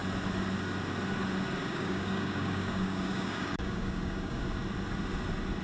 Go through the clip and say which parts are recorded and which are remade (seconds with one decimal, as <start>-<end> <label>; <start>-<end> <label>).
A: 0.0-1.6 recorded; 1.6-4.4 remade; 4.4-5.6 recorded